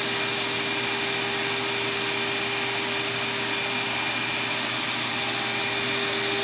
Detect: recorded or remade recorded